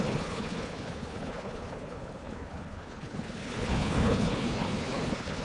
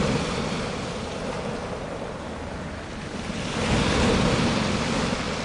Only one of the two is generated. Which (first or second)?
first